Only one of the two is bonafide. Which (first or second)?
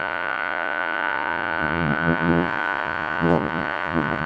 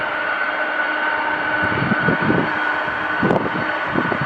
second